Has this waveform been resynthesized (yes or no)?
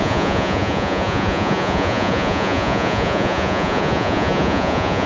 yes